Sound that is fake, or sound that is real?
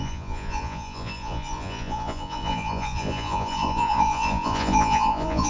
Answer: fake